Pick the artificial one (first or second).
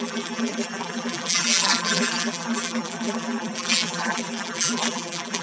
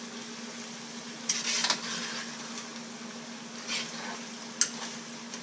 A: first